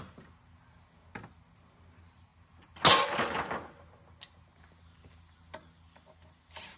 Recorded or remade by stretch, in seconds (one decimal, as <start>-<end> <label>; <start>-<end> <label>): 0.0-6.8 recorded